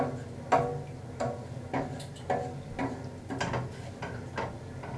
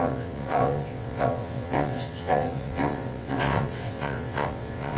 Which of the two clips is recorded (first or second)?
first